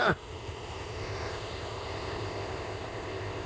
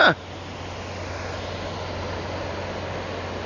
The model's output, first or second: first